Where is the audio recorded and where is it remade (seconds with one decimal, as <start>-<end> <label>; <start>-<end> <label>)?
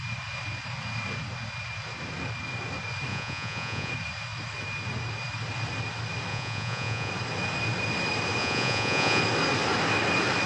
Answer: 0.0-3.1 recorded; 3.1-3.9 remade; 3.9-6.3 recorded; 6.3-7.1 remade; 7.1-8.4 recorded; 8.4-9.2 remade; 9.2-10.5 recorded